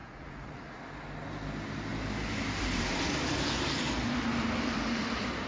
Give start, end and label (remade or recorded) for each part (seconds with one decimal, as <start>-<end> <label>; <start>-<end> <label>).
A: 0.0-0.8 remade; 0.8-5.5 recorded